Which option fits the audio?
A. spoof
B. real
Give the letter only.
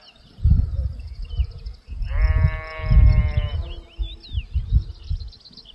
B